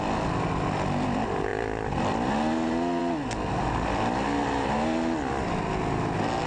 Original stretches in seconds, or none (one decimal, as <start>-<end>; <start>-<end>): 0.0-6.5